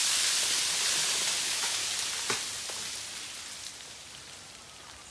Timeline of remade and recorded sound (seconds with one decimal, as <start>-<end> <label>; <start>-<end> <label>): 0.0-1.4 recorded; 1.4-1.8 remade; 1.8-5.1 recorded

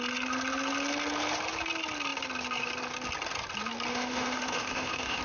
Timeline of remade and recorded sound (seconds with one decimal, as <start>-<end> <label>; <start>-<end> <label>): 0.0-3.9 recorded; 3.9-5.2 remade